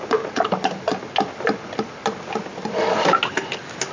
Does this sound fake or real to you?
real